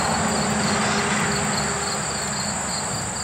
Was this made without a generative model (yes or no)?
yes